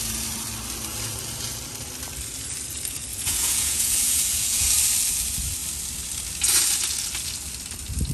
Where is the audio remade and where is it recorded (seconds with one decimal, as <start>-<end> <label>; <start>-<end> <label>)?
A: 0.0-3.1 recorded; 3.1-4.7 remade; 4.7-8.1 recorded